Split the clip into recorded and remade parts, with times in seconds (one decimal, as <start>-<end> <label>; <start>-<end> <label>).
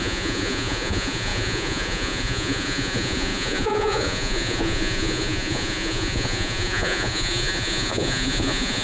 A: 0.0-8.8 remade